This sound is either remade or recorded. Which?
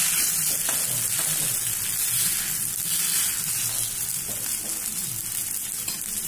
recorded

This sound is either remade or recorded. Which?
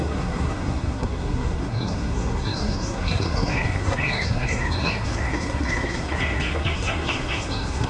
remade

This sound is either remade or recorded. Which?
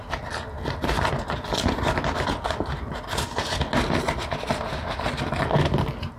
recorded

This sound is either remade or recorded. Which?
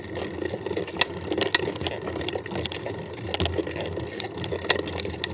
recorded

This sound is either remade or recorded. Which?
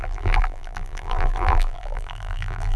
remade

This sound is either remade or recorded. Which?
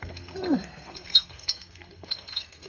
remade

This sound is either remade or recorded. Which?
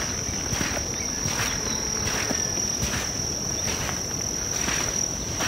recorded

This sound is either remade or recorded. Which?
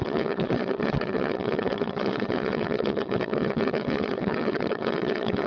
remade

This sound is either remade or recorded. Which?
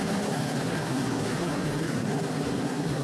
remade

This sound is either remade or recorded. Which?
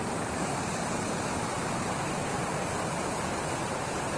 remade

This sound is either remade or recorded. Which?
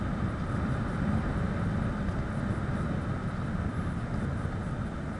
recorded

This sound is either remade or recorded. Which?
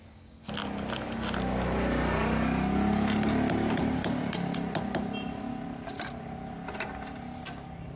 recorded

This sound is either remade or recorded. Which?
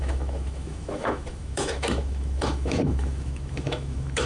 remade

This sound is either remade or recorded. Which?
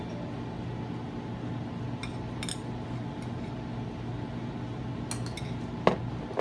recorded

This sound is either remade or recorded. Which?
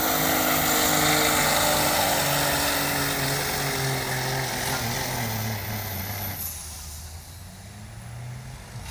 recorded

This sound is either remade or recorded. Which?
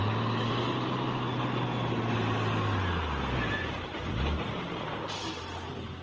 recorded